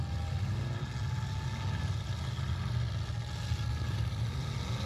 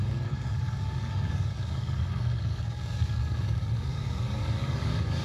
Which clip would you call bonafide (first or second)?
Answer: first